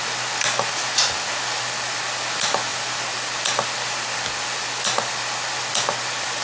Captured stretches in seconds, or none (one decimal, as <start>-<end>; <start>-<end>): 0.0-6.4

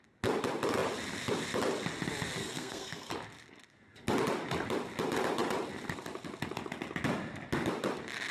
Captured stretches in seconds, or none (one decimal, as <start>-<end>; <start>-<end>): 0.0-2.4; 3.1-8.3

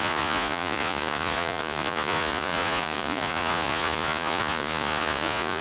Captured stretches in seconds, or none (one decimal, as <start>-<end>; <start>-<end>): none

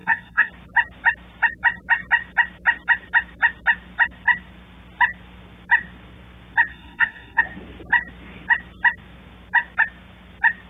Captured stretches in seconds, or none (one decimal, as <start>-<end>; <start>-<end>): 0.5-6.7; 7.4-10.7

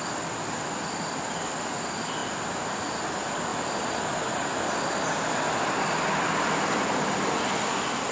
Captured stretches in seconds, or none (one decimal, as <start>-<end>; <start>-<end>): 0.0-8.1

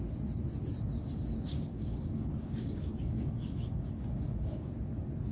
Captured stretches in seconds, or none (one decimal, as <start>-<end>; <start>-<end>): 0.0-1.5; 4.7-5.3

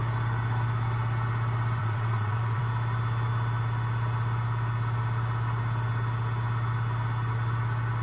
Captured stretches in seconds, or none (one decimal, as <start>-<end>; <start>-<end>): 0.0-1.8; 2.6-8.0

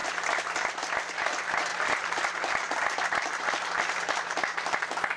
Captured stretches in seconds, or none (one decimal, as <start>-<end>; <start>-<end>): 1.1-1.7; 4.8-5.2